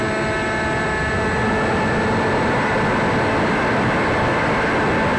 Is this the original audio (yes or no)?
yes